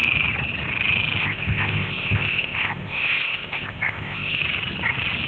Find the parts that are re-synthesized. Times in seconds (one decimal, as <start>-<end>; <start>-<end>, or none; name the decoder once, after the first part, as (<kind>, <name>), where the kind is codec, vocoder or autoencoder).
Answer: 1.2-4.4 (codec, ZipCodec)